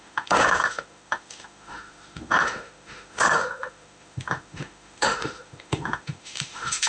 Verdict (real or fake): fake